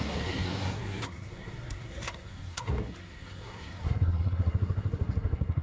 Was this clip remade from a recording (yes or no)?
yes